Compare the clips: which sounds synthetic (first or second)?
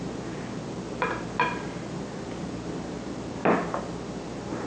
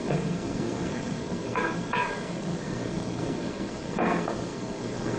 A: second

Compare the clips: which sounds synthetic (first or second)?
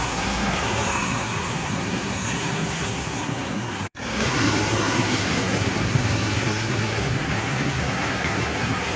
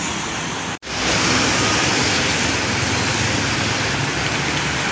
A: first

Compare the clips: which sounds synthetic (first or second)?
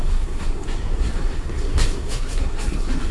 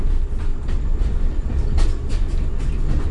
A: first